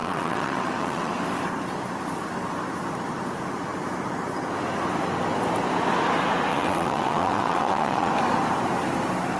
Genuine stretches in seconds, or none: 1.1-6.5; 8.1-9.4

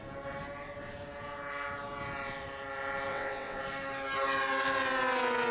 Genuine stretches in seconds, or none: 0.0-3.1; 3.6-5.5

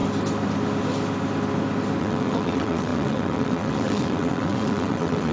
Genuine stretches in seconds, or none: 0.0-2.0

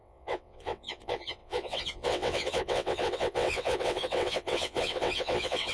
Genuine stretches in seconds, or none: none

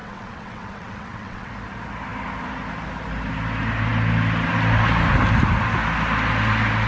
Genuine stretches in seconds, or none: 1.5-6.9